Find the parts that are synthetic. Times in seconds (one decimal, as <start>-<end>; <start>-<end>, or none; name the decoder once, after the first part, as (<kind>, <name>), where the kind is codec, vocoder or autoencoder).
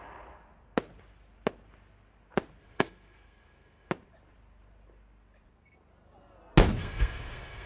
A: 2.6-3.9 (codec, SNAC); 6.8-7.7